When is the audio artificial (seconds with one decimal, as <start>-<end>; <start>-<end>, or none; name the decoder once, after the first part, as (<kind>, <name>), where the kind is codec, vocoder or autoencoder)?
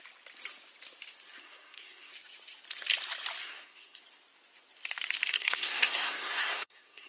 1.4-2.1 (codec, SNAC); 3.4-4.0; 5.3-7.1